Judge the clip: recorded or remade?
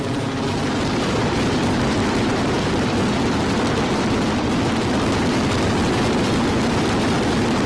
remade